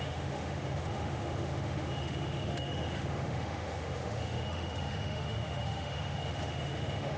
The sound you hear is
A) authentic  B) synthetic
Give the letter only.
B